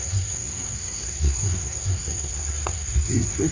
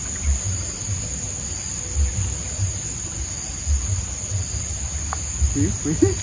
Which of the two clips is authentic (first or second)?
second